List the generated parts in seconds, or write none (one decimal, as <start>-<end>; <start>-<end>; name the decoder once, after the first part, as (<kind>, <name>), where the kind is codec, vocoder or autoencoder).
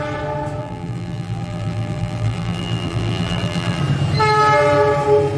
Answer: 0.6-3.8 (vocoder, BigVGAN v2)